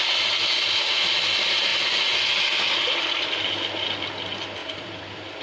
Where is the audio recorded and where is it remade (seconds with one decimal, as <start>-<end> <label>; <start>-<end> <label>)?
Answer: 0.0-4.6 recorded; 4.6-5.4 remade